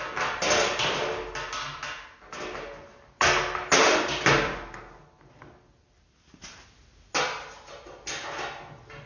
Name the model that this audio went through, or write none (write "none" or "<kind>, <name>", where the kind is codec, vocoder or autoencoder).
none